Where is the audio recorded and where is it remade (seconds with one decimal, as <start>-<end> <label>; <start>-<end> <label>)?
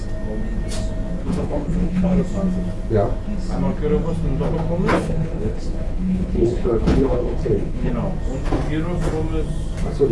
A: 0.0-1.2 recorded; 1.2-2.2 remade; 2.2-4.9 recorded; 4.9-7.9 remade; 7.9-10.1 recorded